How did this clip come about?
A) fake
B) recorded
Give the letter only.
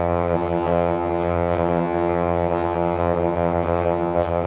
A